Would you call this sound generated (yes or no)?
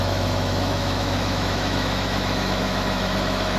yes